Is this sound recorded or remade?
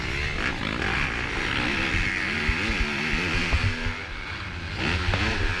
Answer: recorded